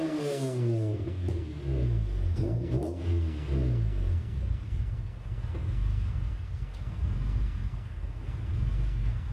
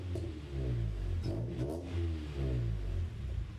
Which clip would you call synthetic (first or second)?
first